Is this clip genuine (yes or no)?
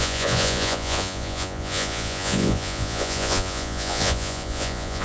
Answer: no